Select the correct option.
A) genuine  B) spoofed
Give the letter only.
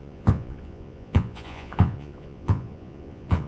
B